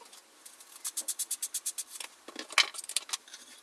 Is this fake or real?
real